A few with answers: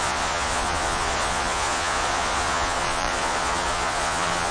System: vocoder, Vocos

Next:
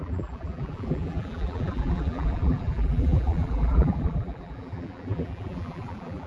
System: vocoder, BigVGAN v2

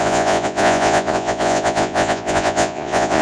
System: vocoder, Vocos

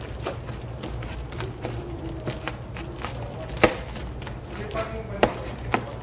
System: none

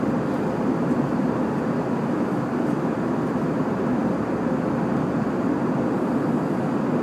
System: none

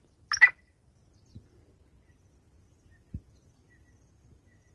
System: none